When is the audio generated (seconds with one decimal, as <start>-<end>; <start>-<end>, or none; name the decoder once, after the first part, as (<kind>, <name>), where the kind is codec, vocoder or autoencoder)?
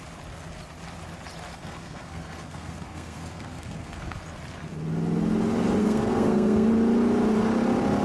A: 1.5-4.2 (codec, SNAC); 5.8-6.7